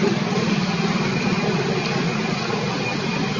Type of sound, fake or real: real